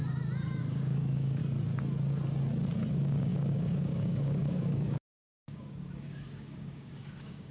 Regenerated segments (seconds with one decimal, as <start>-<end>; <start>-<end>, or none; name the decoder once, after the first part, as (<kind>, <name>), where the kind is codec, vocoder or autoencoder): 0.6-1.4 (codec, DAC); 2.9-7.5